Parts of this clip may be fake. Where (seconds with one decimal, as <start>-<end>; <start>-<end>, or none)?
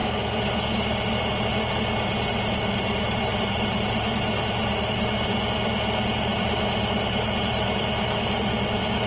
2.3-4.9; 6.3-8.5